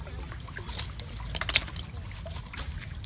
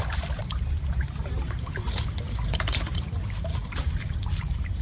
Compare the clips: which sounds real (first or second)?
first